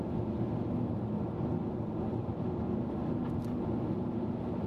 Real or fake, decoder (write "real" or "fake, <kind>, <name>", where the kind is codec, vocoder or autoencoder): real